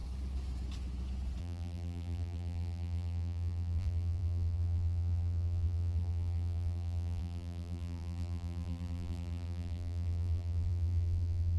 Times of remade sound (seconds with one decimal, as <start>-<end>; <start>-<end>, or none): 1.4-11.6